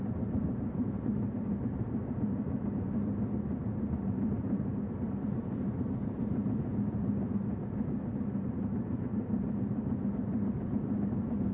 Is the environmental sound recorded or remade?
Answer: remade